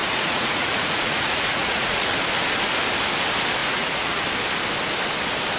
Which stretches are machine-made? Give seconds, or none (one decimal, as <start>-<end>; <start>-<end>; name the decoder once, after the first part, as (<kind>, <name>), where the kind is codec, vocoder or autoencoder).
0.0-2.1 (vocoder, Vocos); 3.6-4.2